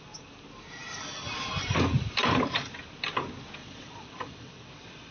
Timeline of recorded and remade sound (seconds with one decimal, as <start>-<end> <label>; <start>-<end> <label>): 0.0-3.6 recorded; 3.6-5.1 remade